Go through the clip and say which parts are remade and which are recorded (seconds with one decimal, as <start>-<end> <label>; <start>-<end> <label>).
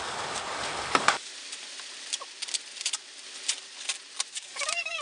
0.0-1.3 remade; 1.3-4.3 recorded; 4.3-5.0 remade